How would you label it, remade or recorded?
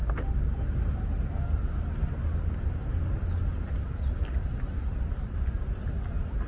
recorded